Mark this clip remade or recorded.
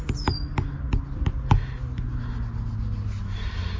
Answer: recorded